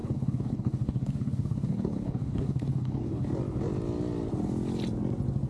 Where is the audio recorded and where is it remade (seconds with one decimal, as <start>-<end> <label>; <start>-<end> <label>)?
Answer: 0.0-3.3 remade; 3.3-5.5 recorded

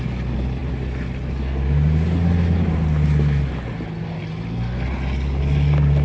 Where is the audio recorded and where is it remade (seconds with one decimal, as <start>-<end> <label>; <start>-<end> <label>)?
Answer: 0.0-6.0 recorded

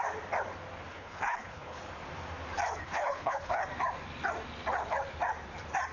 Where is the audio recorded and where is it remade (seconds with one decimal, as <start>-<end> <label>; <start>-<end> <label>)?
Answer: 0.0-0.9 recorded; 0.9-1.8 remade; 1.8-2.8 recorded; 2.8-3.6 remade; 3.6-5.9 recorded